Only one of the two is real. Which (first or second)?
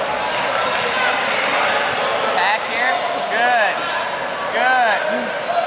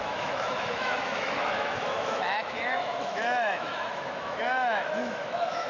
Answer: first